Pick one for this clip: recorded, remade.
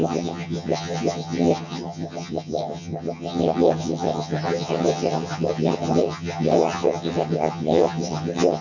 remade